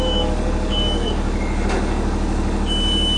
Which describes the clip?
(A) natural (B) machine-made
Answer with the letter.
B